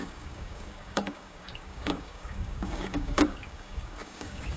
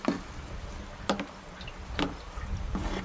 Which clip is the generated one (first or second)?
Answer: first